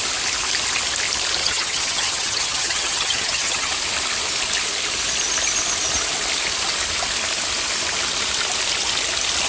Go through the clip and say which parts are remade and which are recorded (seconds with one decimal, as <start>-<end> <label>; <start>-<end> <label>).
0.0-1.4 recorded; 1.4-3.7 remade; 3.7-9.5 recorded